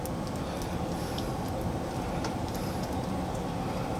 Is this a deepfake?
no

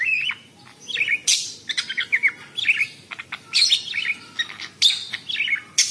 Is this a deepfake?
no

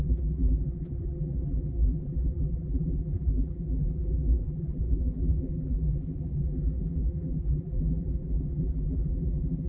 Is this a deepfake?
yes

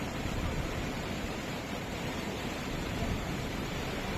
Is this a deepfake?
yes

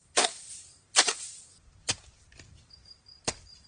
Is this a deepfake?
yes